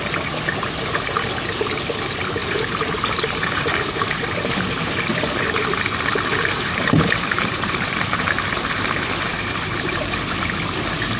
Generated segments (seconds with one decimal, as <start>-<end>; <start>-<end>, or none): 2.4-5.5; 6.3-8.7; 9.3-10.1